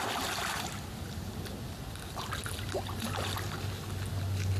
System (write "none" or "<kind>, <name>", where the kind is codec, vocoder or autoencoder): none